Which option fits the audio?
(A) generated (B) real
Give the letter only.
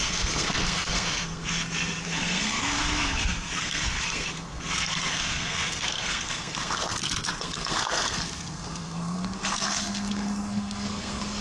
A